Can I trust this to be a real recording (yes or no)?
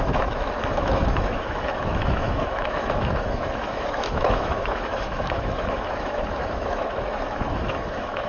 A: no